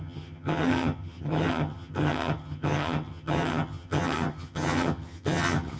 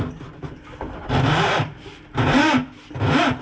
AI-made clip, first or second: first